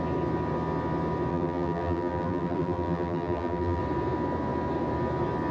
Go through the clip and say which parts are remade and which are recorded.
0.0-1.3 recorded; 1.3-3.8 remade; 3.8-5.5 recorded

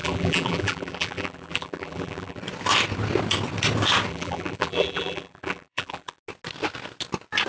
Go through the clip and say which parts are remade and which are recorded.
0.0-2.4 remade; 2.4-4.1 recorded; 4.1-6.2 remade; 6.2-7.5 recorded

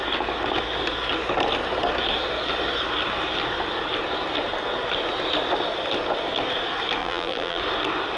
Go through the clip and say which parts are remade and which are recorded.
0.0-7.0 recorded; 7.0-7.6 remade; 7.6-8.2 recorded

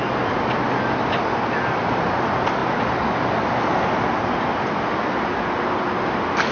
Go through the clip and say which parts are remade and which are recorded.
0.0-6.5 recorded

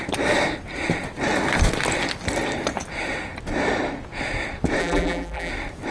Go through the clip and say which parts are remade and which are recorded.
0.0-4.8 recorded; 4.8-5.5 remade; 5.5-5.9 recorded

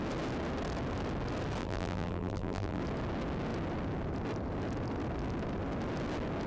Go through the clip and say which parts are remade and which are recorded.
0.0-1.6 recorded; 1.6-2.8 remade; 2.8-6.5 recorded

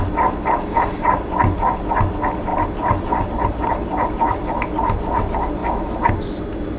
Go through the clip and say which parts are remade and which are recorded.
0.0-5.6 recorded; 5.6-6.8 remade

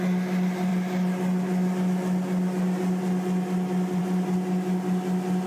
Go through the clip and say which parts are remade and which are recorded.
0.0-5.5 recorded